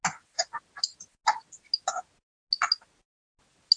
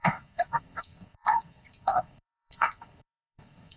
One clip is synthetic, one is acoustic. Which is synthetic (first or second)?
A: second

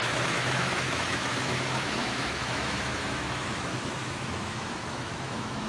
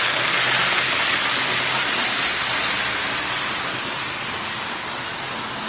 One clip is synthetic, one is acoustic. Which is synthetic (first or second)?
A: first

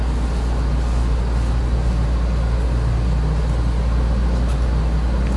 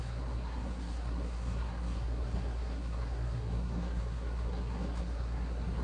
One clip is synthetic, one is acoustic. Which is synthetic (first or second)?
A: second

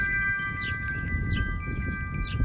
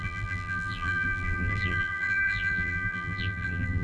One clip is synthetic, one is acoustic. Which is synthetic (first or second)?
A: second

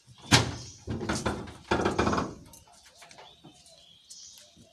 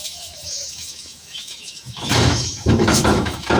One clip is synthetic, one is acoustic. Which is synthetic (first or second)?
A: second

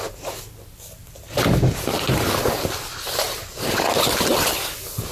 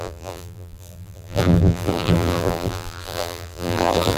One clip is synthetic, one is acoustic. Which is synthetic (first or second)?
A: second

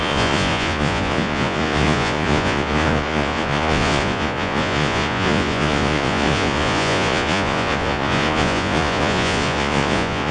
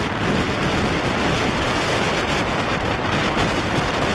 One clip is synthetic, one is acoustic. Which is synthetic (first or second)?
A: first